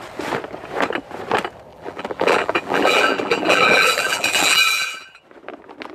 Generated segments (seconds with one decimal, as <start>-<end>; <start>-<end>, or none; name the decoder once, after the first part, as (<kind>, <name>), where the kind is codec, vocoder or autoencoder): 1.7-5.2 (vocoder, BigVGAN v2)